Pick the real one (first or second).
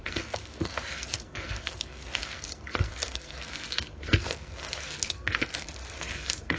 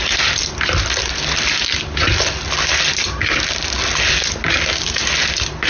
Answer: second